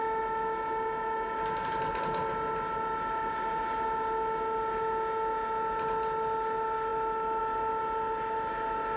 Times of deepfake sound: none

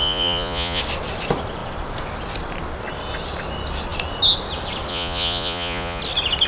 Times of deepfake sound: 0.0-0.8 (vocoder, Vocos); 4.9-6.0

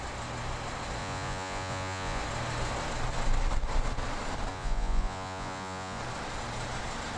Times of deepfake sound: 1.0-2.2 (vocoder, Vocos); 4.5-6.0

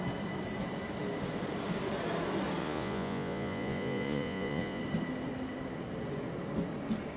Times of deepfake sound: 2.6-4.8 (vocoder, Vocos)

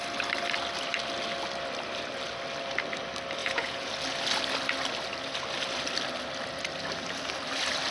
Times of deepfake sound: 3.4-3.9 (vocoder, Vocos)

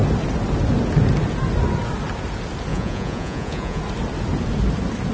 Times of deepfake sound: 2.7-3.8 (vocoder, Vocos)